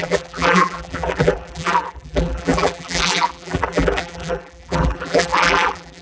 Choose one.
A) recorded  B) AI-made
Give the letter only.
B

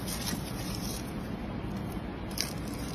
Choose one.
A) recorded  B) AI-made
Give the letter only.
B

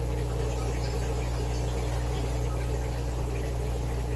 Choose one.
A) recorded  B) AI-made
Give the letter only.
A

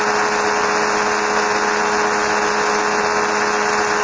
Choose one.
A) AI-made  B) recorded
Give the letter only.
B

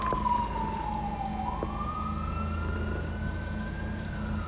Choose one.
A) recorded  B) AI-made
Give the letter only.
A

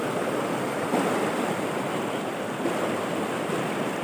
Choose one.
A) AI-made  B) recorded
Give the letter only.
B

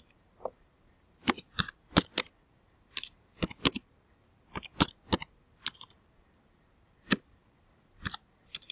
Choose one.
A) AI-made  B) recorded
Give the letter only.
A